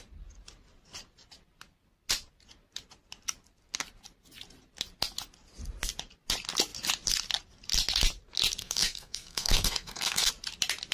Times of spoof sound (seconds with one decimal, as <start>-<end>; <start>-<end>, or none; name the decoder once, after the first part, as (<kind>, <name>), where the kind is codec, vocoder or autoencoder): 8.6-10.3 (codec, SNAC)